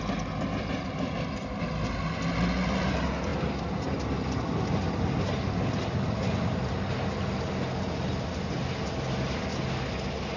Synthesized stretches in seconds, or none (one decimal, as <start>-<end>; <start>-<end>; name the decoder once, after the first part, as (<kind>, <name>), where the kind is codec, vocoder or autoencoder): none